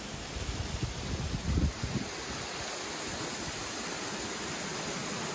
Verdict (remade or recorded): recorded